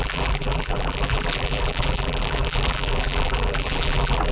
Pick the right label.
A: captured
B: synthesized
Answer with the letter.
B